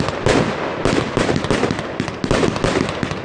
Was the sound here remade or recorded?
recorded